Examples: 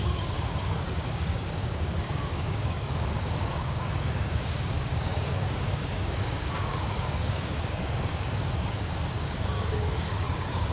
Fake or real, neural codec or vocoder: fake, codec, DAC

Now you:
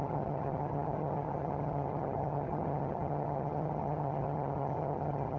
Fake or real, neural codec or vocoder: fake, vocoder, HiFi-GAN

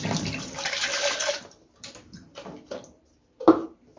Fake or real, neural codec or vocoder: real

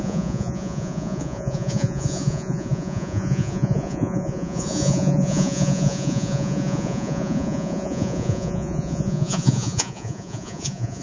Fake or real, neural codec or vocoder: fake, vocoder, Vocos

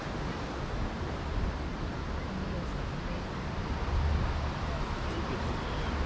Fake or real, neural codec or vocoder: real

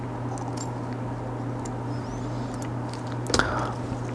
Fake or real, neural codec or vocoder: real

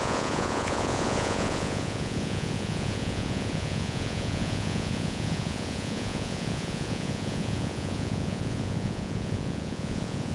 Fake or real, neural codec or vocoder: fake, vocoder, Vocos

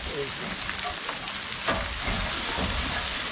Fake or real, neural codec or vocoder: real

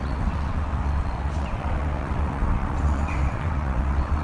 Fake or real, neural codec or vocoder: fake, vocoder, WaveNeXt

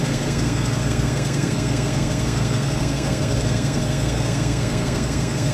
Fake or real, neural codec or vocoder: fake, codec, SNAC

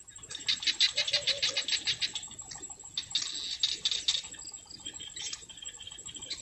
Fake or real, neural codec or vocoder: real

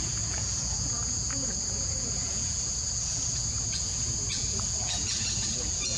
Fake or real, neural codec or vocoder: fake, vocoder, Vocos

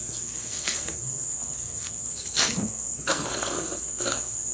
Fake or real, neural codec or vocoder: fake, codec, SNAC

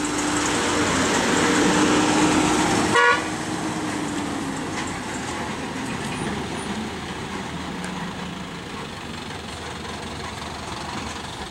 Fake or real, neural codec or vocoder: real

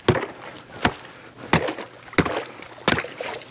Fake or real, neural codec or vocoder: real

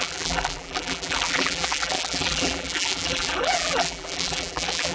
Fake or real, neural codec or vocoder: fake, vocoder, BigVGAN v2